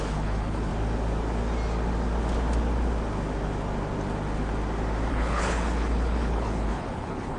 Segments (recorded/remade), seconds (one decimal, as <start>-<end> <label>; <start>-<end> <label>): 0.0-0.7 remade; 0.7-5.1 recorded; 5.1-7.4 remade